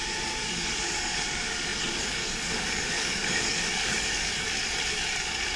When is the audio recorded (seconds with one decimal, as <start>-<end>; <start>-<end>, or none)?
none